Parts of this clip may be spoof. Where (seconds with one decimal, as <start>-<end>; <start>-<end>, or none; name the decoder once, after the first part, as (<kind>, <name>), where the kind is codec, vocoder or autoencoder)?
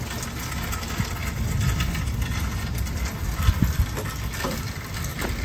none